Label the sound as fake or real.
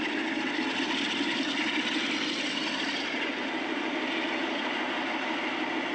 real